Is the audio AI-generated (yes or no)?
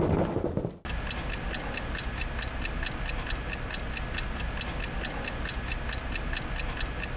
no